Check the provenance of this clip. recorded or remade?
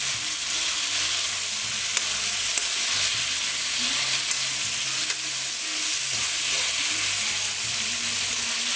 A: recorded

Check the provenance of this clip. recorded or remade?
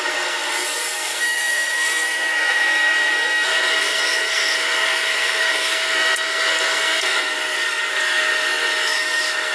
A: remade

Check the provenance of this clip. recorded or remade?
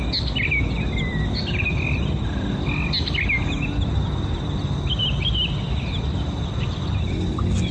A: recorded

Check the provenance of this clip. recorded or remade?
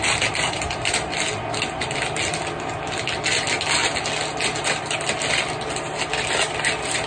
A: recorded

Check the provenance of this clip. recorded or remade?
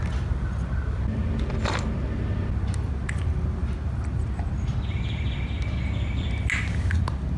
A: recorded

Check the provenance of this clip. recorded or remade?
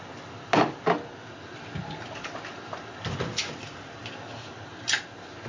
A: recorded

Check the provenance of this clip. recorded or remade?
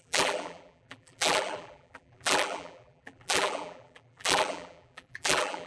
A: remade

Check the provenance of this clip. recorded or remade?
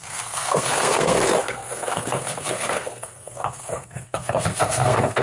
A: remade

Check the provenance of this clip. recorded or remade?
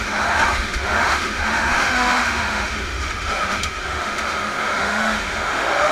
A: remade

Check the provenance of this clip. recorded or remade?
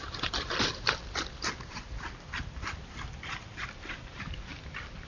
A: recorded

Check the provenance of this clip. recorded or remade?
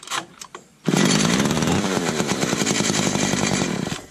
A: remade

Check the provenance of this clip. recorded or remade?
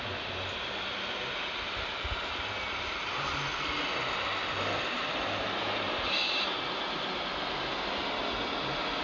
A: recorded